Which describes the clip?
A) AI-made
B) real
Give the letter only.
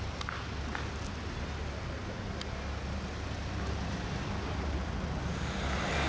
B